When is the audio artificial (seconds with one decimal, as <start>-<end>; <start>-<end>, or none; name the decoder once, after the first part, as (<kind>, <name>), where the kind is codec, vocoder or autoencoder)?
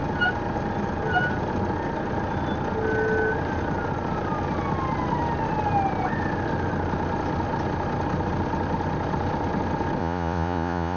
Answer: 10.0-11.0 (vocoder, Vocos)